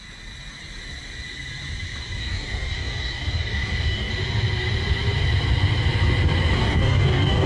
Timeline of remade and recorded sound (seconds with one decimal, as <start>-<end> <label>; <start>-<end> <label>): 0.0-2.2 recorded; 2.2-4.1 remade; 4.1-6.6 recorded; 6.6-7.5 remade